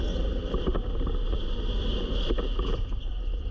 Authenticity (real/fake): real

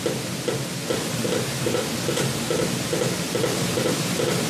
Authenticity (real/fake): real